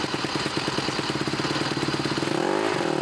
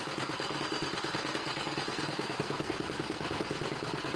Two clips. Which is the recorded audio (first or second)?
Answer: first